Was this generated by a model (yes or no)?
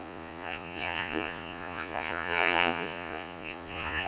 yes